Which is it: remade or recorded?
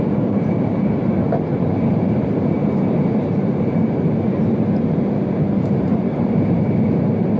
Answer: remade